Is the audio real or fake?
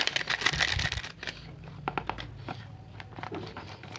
real